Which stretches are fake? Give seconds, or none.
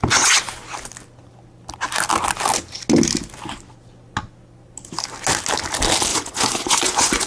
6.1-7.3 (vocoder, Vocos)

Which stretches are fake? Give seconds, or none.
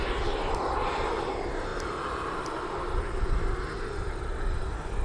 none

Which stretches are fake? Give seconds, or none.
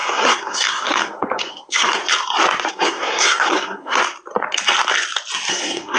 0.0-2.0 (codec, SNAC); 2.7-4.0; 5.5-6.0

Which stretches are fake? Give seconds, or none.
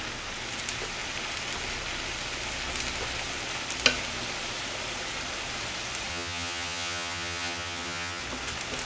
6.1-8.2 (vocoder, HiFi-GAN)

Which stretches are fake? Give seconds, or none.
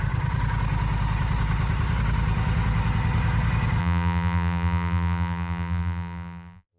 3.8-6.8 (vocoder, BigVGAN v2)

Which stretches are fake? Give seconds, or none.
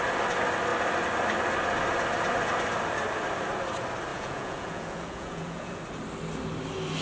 4.1-5.8 (vocoder, Vocos)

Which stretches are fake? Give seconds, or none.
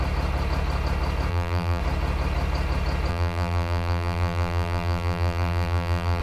1.3-1.8 (vocoder, BigVGAN v2); 3.1-6.2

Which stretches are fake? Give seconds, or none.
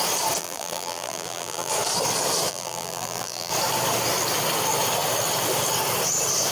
0.4-1.7 (vocoder, BigVGAN v2); 2.5-3.5